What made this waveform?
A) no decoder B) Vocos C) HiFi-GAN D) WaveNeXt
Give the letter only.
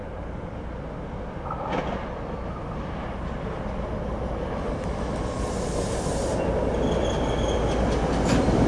A